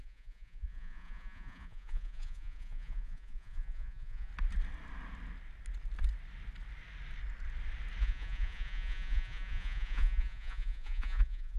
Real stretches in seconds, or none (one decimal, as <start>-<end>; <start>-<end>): 4.3-8.0